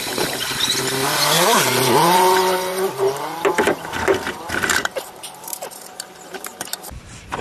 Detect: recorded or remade remade